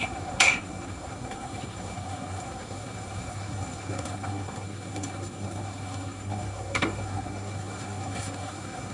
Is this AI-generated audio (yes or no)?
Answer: yes